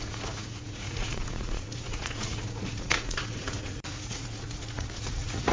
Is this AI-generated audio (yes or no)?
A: yes